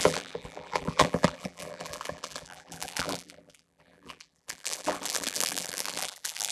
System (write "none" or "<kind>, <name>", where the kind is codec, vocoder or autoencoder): vocoder, BigVGAN v2